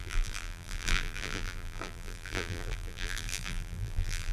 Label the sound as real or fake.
fake